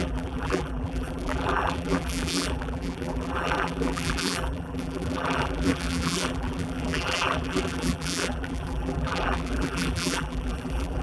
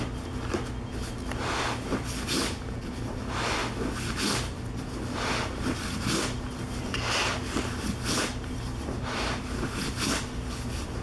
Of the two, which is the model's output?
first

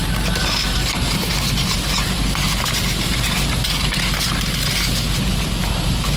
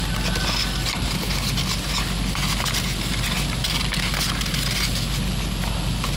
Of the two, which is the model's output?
first